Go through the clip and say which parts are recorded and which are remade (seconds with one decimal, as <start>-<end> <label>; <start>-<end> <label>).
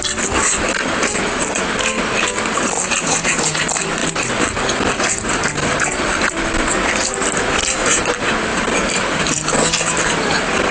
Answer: 0.0-8.5 recorded; 8.5-9.5 remade; 9.5-10.7 recorded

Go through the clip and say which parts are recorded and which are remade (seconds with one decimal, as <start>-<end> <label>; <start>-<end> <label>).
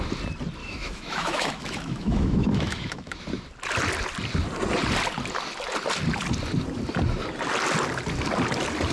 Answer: 0.0-0.6 recorded; 0.6-3.2 remade; 3.2-8.9 recorded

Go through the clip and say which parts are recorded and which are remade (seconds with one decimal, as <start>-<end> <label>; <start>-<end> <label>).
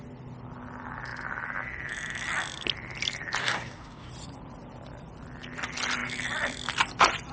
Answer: 0.0-3.4 recorded; 3.4-4.1 remade; 4.1-7.3 recorded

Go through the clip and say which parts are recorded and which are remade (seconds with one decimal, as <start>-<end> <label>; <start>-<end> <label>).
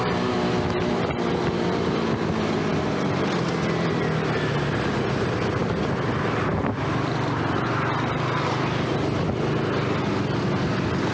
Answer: 0.0-11.1 recorded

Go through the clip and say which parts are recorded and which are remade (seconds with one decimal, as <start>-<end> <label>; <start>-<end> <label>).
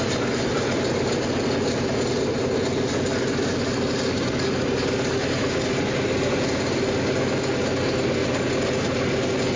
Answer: 0.0-9.6 recorded